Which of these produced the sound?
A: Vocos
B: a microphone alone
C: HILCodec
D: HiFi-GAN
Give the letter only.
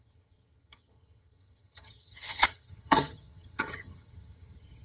D